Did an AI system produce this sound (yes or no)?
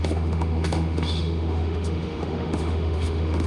yes